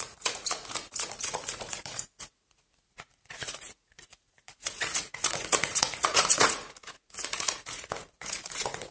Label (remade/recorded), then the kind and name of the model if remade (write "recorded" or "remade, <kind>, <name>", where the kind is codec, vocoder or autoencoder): remade, vocoder, Vocos